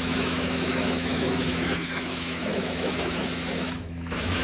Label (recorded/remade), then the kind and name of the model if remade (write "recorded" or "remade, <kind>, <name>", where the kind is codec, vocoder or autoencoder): remade, autoencoder, DAC-VAE